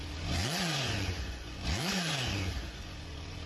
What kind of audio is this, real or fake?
fake